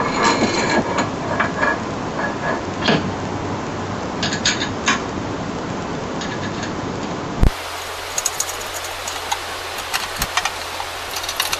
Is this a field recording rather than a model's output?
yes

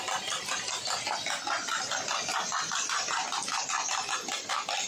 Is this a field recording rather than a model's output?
yes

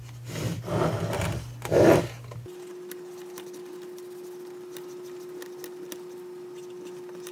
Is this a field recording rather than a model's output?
yes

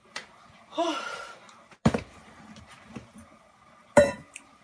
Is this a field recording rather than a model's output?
no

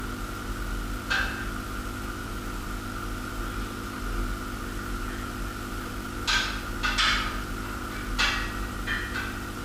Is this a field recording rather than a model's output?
yes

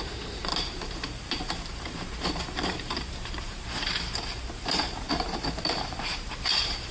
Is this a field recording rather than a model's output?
no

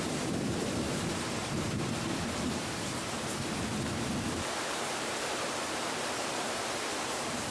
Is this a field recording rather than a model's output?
no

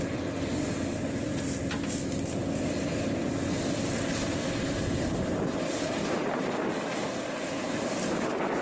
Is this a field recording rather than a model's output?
yes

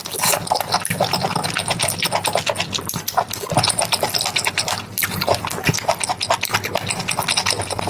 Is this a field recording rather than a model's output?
yes